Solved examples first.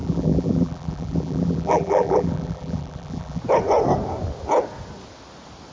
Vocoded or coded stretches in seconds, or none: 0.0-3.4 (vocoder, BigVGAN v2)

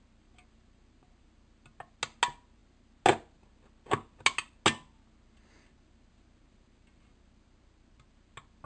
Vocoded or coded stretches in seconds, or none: none

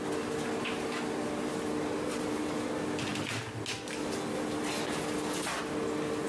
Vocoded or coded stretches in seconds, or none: none

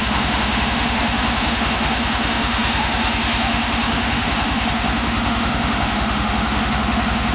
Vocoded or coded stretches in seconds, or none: 0.0-7.3 (autoencoder, DAC-VAE)

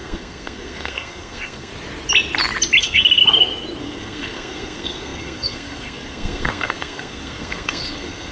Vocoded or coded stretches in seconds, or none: 0.0-1.7 (codec, SNAC); 2.8-3.2; 3.8-8.3

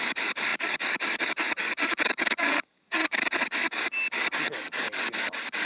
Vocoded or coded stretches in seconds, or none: 0.0-5.7 (codec, DAC)

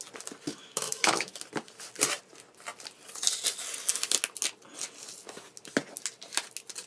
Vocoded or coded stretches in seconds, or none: 0.5-1.3 (autoencoder, DAC-VAE)

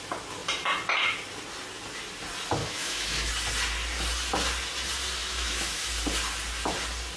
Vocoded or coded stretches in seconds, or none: 2.6-3.3 (autoencoder, DAC-VAE); 5.2-5.9